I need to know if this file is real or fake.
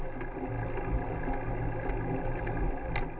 real